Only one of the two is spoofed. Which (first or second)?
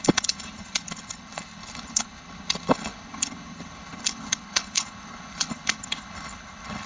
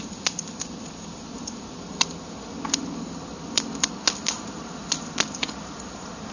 first